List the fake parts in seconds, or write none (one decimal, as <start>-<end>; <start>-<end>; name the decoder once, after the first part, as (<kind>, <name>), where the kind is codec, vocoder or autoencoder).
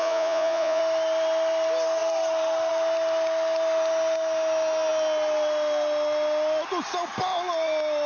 0.0-0.8 (vocoder, Vocos)